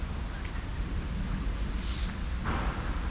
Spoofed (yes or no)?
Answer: no